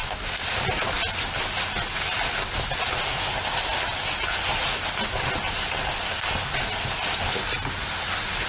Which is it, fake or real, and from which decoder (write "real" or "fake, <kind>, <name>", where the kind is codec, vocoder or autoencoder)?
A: real